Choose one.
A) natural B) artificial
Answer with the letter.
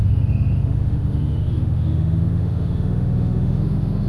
B